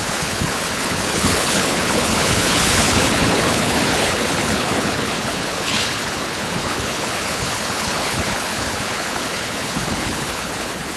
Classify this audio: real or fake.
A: fake